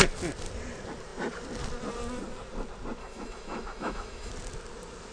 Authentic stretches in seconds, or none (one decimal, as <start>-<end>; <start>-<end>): 0.0-3.0; 4.3-5.1